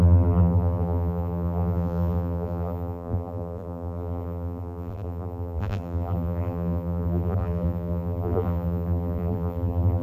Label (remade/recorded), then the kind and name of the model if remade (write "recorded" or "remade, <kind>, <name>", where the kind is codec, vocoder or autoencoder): remade, vocoder, BigVGAN v2